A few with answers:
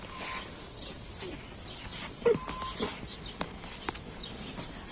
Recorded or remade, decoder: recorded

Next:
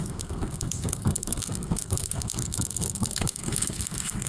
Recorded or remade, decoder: remade, codec, SNAC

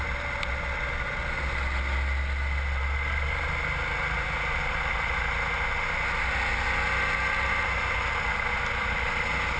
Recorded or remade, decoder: recorded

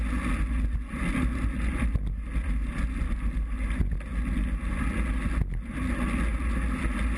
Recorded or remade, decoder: recorded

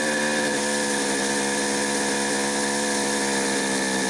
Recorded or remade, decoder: recorded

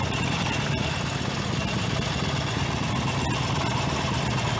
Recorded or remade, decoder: recorded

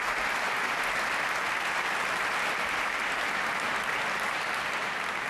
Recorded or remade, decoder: recorded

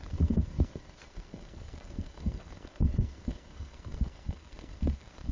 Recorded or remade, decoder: remade, codec, SNAC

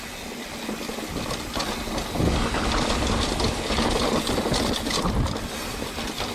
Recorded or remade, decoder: recorded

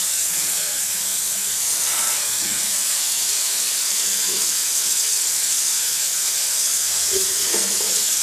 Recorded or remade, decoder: remade, codec, SNAC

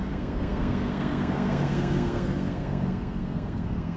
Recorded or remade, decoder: remade, codec, SNAC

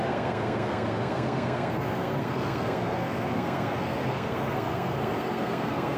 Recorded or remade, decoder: remade, codec, SNAC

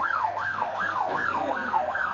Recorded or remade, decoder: remade, codec, SNAC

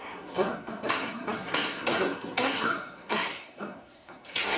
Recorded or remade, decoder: remade, codec, SNAC